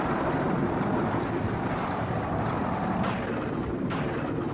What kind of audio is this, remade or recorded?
recorded